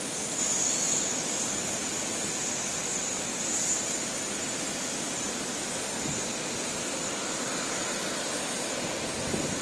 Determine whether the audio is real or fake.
real